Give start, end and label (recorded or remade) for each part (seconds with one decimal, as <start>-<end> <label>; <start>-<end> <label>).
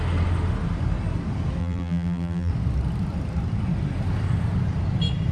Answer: 0.0-1.6 recorded; 1.6-2.5 remade; 2.5-5.3 recorded